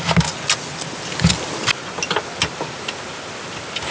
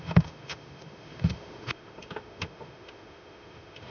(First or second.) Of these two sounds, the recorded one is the first